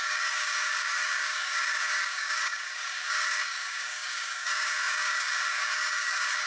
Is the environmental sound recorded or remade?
remade